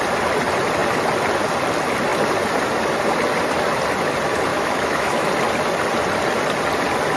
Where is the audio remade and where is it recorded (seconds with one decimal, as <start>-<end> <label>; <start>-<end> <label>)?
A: 0.0-4.5 recorded; 4.5-5.3 remade; 5.3-7.2 recorded